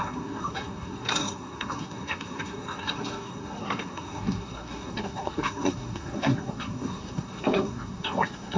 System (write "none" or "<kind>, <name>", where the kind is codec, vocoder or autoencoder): codec, SNAC